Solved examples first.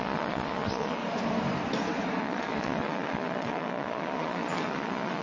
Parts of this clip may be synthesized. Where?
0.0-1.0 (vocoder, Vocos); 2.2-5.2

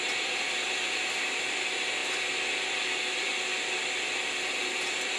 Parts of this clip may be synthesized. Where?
none

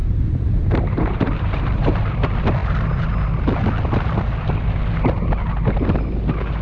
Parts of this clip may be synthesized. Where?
0.0-1.9 (vocoder, BigVGAN v2)

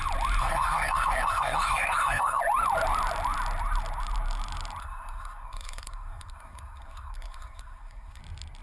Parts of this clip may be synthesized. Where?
0.4-2.4 (codec, SNAC); 4.8-8.2

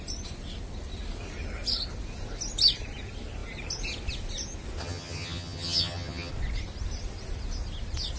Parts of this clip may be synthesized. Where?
4.8-6.3 (vocoder, HiFi-GAN)

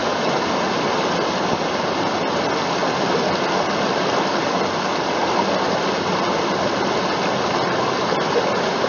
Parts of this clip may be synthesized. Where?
0.0-0.5 (autoencoder, DAC-VAE)

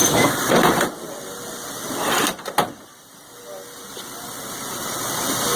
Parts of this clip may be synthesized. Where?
0.0-3.4 (vocoder, BigVGAN v2)

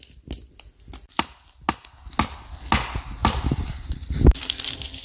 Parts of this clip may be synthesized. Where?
3.2-4.5 (vocoder, BigVGAN v2)